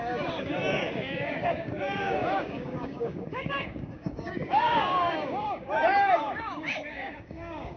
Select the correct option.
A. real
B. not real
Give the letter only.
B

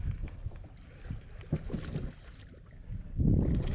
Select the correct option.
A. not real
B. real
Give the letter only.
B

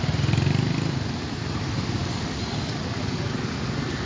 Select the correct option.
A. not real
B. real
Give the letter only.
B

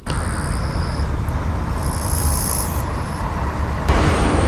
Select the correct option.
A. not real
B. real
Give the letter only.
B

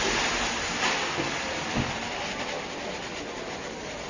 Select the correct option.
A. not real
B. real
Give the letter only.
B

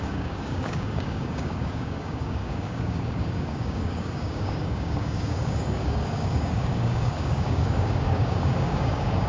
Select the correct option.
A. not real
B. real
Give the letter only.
A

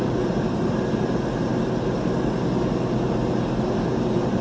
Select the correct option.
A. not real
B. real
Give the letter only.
B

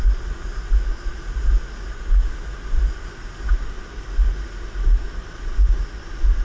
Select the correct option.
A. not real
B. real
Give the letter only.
B